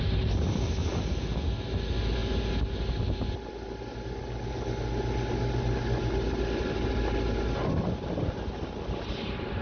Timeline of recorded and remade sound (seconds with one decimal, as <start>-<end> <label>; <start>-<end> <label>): 0.0-9.6 recorded

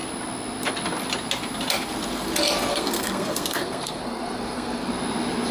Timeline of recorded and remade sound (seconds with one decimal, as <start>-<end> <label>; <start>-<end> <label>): 0.0-2.7 recorded; 2.7-4.9 remade; 4.9-5.5 recorded

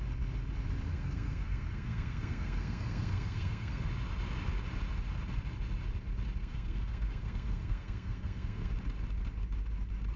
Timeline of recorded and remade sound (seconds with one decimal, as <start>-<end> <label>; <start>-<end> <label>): 0.0-0.9 recorded; 0.9-3.9 remade; 3.9-6.4 recorded; 6.4-8.7 remade; 8.7-10.2 recorded

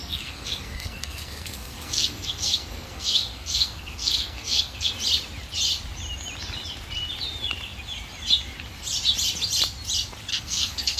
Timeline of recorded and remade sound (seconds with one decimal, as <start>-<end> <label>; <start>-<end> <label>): 0.0-4.9 remade; 4.9-10.3 recorded; 10.3-11.0 remade

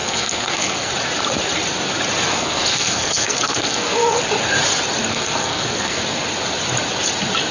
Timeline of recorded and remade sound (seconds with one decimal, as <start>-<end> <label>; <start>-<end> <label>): 0.0-0.9 remade; 0.9-2.3 recorded; 2.3-4.2 remade; 4.2-5.1 recorded; 5.1-6.0 remade; 6.0-7.5 recorded

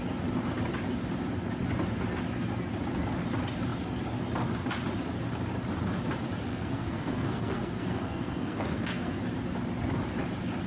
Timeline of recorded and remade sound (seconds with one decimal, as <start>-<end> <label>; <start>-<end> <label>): 0.0-6.5 recorded; 6.5-9.2 remade; 9.2-10.7 recorded

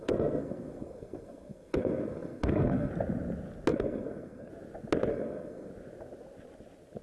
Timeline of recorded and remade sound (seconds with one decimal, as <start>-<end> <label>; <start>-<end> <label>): 0.0-2.9 remade; 2.9-3.7 recorded; 3.7-4.5 remade; 4.5-5.1 recorded; 5.1-5.7 remade; 5.7-7.0 recorded